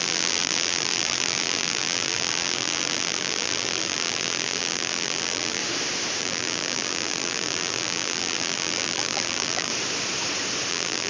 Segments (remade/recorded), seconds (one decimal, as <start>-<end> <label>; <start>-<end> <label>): 0.0-5.6 remade; 5.6-6.2 recorded; 6.2-9.7 remade; 9.7-10.7 recorded; 10.7-11.1 remade